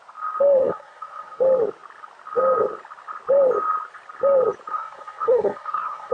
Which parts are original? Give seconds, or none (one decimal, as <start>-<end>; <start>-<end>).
0.0-0.6; 1.4-4.7